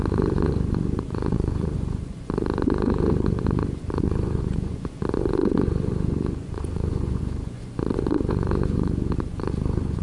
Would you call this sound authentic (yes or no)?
no